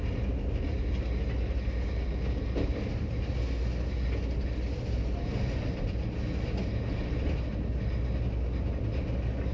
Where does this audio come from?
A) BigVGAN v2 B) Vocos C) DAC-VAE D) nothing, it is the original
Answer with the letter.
D